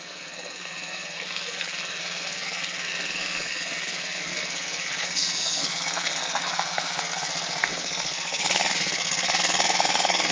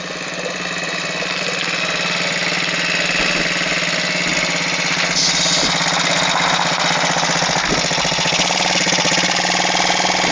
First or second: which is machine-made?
first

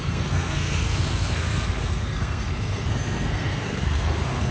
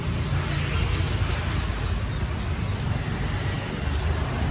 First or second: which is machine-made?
first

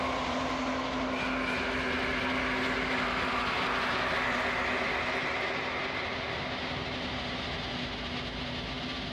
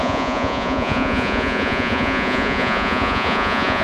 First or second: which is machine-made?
second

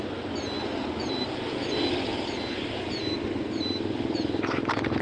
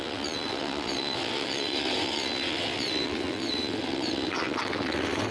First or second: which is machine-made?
second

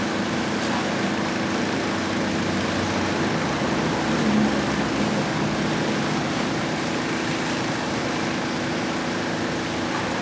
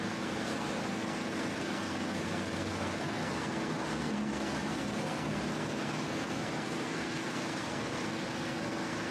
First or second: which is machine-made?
second